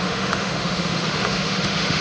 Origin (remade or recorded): remade